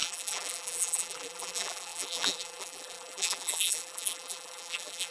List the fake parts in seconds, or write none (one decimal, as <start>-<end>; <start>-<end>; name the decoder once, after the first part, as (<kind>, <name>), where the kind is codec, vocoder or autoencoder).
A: 0.0-5.1 (vocoder, BigVGAN v2)